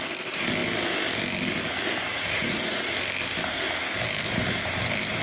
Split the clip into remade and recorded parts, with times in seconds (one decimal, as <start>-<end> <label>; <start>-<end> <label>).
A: 0.0-2.1 recorded; 2.1-2.9 remade; 2.9-5.2 recorded